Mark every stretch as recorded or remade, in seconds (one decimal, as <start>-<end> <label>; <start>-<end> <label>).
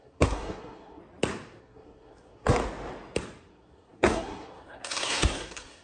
0.0-1.0 remade; 1.0-1.6 recorded; 1.6-2.6 remade; 2.6-3.5 recorded; 3.5-5.8 remade